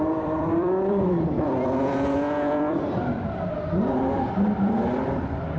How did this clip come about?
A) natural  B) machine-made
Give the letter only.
B